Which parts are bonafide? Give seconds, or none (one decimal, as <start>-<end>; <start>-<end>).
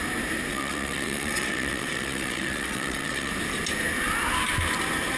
0.0-0.5; 3.3-5.2